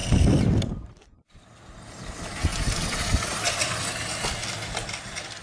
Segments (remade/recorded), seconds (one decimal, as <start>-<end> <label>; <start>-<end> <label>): 0.0-5.4 recorded